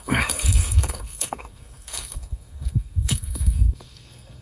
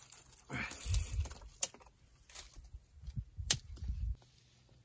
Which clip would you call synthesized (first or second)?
first